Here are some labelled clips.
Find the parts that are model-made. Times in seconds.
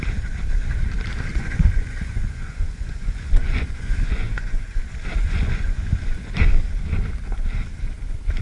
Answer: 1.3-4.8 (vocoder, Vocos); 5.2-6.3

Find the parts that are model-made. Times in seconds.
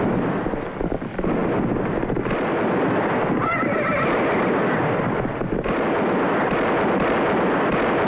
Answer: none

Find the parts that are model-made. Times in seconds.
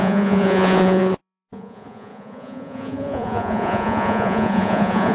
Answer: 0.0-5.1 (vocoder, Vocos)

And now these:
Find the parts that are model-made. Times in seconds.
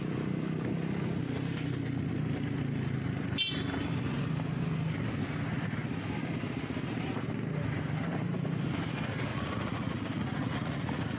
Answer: 9.3-11.2 (vocoder, Vocos)